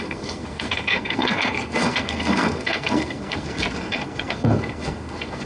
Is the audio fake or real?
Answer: fake